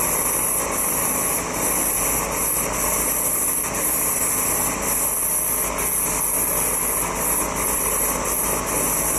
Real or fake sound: real